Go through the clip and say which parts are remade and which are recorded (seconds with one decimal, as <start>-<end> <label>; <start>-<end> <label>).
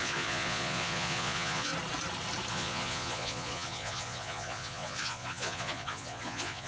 0.0-1.7 remade; 1.7-2.5 recorded; 2.5-6.7 remade